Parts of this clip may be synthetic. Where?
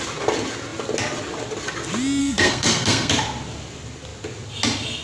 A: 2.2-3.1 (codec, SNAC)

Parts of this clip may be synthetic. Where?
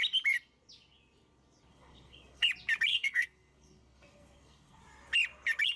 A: 1.7-2.5 (codec, SNAC); 2.9-4.8